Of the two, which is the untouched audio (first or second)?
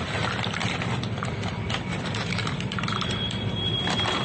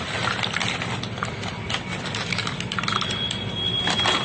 second